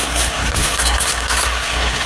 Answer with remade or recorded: remade